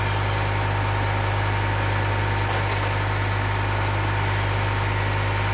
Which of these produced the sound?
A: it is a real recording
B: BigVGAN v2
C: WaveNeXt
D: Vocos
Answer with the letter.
A